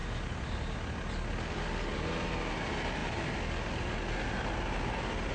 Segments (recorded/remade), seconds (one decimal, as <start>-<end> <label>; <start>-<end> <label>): 0.0-5.3 recorded